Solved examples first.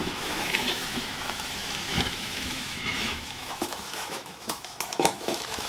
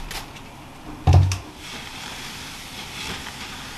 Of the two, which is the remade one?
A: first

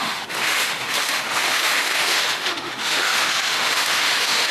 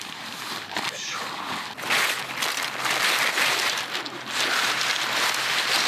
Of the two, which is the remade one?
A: first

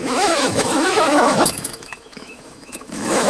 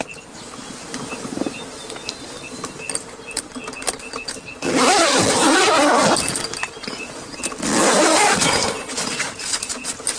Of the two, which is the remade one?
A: first